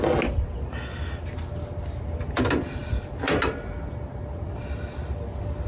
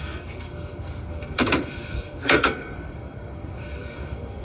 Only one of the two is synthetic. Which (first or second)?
second